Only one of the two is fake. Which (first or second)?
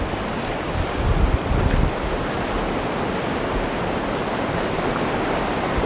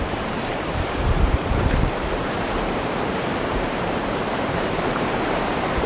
second